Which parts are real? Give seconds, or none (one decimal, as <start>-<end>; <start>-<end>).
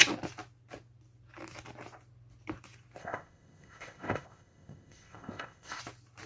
0.0-3.0; 5.8-6.3